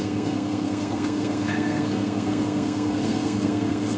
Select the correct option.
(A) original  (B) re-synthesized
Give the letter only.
B